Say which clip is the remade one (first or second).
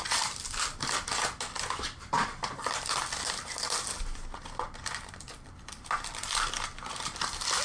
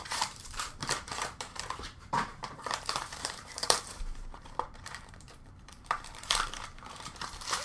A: second